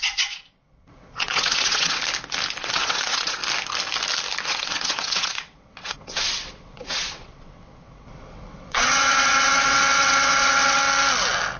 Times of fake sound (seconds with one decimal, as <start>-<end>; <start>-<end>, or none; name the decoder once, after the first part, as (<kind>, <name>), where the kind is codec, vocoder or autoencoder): 0.0-2.0 (vocoder, WaveNeXt); 2.6-3.4; 4.4-10.8